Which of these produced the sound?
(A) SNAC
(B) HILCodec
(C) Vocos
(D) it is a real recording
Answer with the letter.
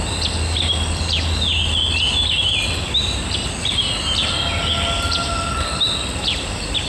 D